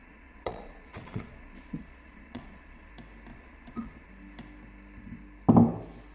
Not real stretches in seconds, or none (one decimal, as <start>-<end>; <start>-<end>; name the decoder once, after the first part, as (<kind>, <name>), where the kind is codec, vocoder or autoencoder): 0.0-2.9 (vocoder, Vocos); 3.3-4.1